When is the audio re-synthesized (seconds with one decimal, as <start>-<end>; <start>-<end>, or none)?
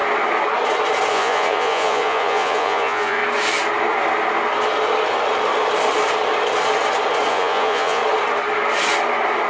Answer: 1.1-3.2; 7.3-8.0